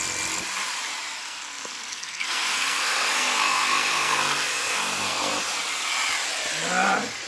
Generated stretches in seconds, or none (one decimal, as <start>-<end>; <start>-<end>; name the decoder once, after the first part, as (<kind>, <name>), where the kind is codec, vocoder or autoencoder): 1.2-5.3 (codec, SNAC)